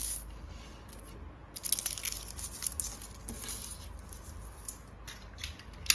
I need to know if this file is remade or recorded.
recorded